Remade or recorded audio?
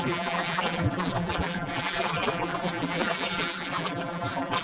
remade